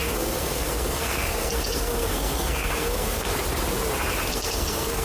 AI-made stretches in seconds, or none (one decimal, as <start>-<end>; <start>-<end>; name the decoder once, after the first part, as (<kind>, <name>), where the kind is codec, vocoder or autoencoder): 0.0-3.3 (codec, SNAC); 4.3-5.0